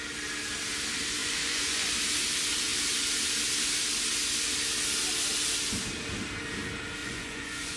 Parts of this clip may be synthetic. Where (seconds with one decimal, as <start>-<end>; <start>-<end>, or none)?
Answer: 1.2-1.9; 7.0-7.8